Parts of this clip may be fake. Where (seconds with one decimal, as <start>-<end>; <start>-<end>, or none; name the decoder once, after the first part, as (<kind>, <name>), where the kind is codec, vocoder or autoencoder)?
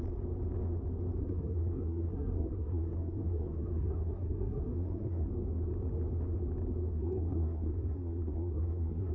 1.2-5.3 (codec, SNAC); 6.9-9.1